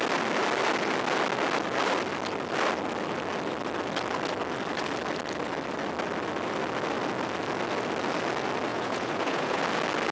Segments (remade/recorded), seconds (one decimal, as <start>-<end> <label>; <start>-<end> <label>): 0.0-8.7 recorded; 8.7-9.6 remade; 9.6-10.1 recorded